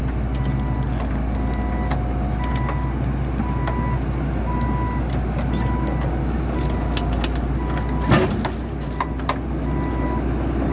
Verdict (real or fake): real